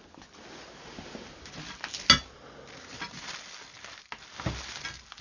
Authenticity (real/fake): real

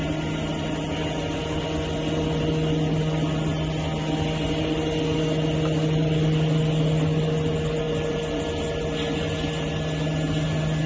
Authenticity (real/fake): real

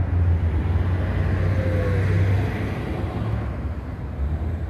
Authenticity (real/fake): real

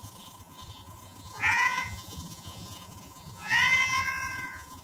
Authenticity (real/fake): fake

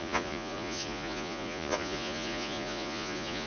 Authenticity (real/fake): fake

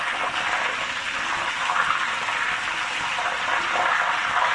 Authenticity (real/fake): real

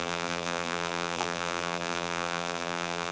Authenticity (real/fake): fake